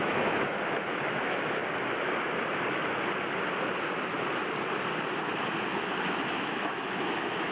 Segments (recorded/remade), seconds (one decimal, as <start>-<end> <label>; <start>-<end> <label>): 0.0-1.6 remade; 1.6-5.6 recorded; 5.6-7.5 remade